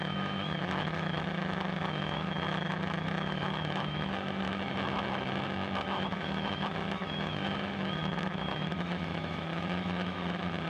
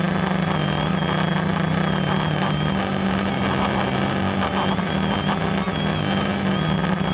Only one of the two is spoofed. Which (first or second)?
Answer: first